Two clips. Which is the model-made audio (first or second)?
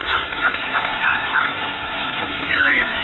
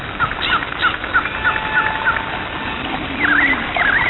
first